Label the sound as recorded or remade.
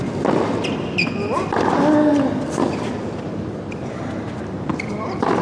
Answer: recorded